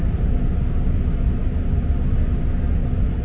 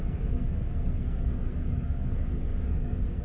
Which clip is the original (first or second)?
first